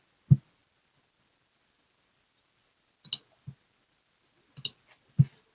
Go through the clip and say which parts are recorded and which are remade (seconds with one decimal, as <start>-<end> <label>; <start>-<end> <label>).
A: 0.0-5.5 recorded